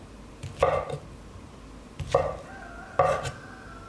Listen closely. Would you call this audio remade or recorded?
recorded